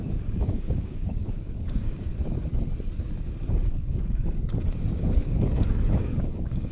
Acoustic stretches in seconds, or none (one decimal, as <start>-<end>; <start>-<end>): 2.1-3.7; 4.2-5.9